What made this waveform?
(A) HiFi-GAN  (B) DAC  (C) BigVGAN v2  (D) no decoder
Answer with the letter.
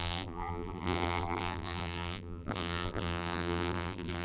C